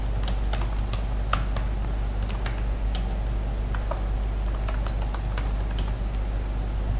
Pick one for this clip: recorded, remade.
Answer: recorded